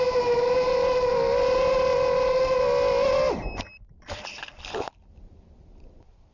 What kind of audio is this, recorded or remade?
recorded